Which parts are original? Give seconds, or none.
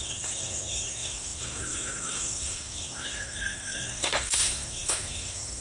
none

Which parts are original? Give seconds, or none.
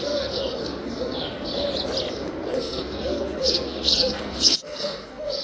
1.5-2.1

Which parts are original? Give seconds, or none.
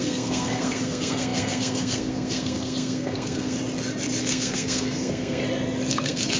3.6-4.2; 5.4-5.9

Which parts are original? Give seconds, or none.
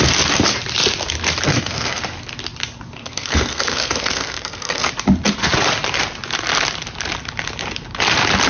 0.0-1.5; 2.0-3.0; 4.9-8.5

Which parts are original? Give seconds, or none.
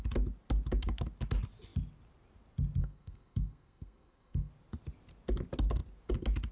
0.0-2.8; 4.5-6.5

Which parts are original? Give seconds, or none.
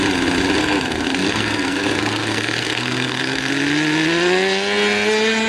0.0-0.6; 3.5-5.5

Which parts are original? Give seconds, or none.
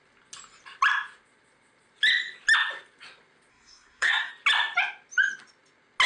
0.0-3.5; 4.3-6.1